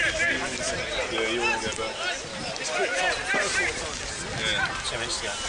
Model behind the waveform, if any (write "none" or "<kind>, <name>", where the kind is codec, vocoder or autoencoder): none